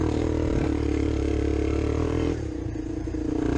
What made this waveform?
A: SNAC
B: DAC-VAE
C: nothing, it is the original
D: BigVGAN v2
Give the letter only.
D